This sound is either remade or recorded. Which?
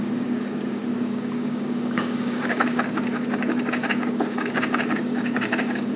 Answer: remade